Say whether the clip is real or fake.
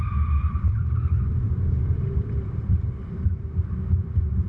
fake